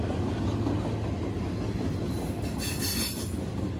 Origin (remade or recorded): recorded